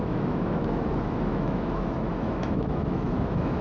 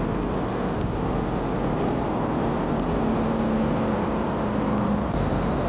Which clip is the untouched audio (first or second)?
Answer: second